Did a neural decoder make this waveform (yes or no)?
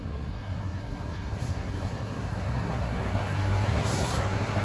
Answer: yes